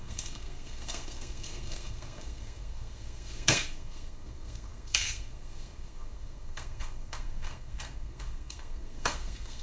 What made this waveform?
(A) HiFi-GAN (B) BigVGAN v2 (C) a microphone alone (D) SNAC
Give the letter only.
D